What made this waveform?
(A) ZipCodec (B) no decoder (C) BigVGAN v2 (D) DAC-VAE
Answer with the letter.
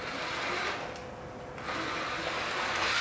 B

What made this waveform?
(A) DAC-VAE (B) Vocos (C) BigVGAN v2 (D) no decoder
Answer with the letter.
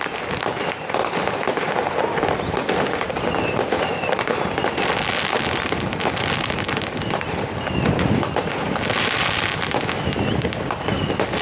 D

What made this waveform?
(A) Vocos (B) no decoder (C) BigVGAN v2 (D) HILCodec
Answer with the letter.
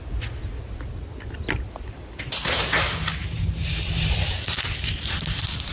B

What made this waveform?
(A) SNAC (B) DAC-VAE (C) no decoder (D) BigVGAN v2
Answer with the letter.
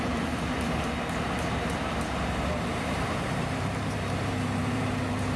D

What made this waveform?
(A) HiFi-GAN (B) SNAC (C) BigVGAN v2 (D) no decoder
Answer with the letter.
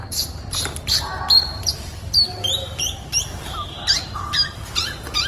C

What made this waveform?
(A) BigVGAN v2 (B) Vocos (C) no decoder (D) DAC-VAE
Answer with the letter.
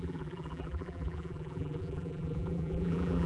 A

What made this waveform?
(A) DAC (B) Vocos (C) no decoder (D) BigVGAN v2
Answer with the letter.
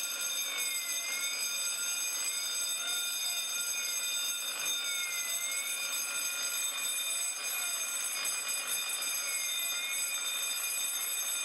C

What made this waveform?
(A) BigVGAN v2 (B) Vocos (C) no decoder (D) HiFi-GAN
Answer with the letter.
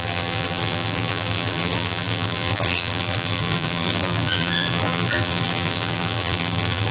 A